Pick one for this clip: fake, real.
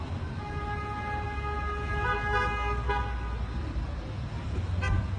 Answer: real